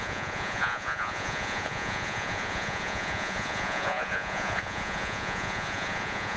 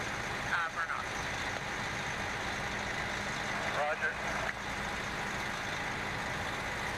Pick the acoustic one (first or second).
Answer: second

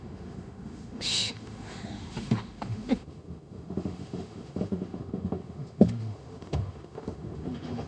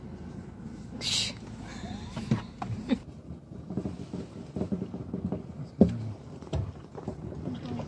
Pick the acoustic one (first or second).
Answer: second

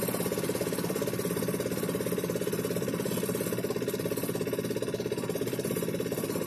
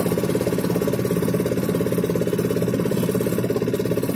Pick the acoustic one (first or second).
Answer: second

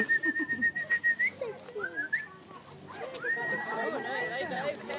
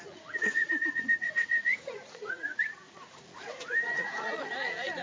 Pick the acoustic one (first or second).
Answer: first